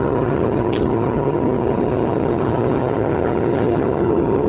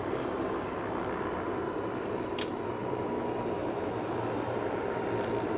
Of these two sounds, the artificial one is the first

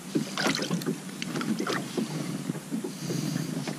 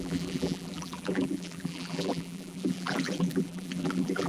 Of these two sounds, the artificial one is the second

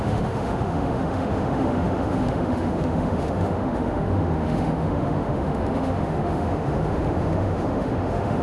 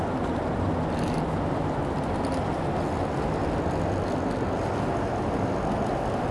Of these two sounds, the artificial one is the first